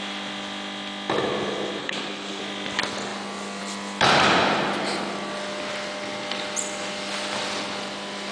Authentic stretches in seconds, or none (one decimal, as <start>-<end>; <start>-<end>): 0.0-1.8; 2.4-8.3